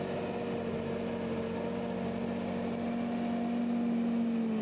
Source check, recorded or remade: recorded